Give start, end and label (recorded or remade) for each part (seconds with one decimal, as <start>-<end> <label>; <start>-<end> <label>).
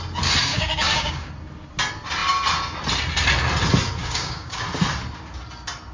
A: 0.0-0.5 recorded; 0.5-1.3 remade; 1.3-4.0 recorded; 4.0-4.6 remade; 4.6-5.9 recorded